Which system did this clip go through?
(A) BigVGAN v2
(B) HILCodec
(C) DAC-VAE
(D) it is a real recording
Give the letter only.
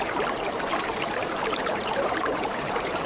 A